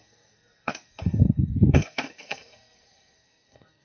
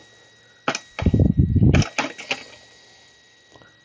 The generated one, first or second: first